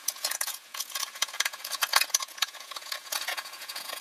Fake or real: fake